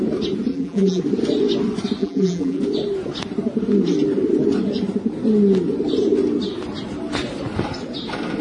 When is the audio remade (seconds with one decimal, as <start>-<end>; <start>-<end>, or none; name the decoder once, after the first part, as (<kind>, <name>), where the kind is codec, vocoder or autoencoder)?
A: 0.5-1.0 (vocoder, BigVGAN v2); 2.0-2.6